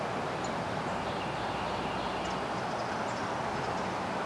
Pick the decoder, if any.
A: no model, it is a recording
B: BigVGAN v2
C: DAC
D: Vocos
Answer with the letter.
A